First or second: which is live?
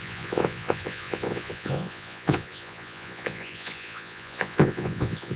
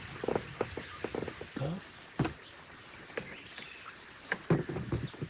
second